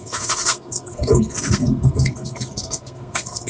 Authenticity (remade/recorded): remade